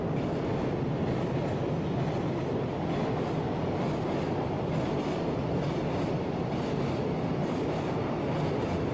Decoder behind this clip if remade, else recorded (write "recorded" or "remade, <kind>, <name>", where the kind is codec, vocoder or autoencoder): recorded